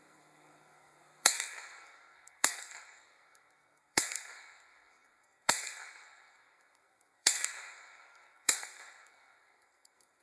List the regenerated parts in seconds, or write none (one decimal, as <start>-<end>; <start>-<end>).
0.0-10.2

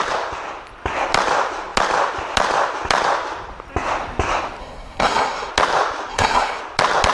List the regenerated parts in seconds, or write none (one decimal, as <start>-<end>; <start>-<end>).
4.6-5.5; 6.1-6.6